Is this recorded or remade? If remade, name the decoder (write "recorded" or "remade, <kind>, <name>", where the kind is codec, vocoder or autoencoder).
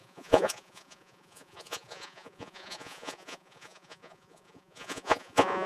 remade, vocoder, Vocos